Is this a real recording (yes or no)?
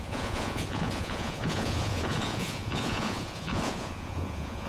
no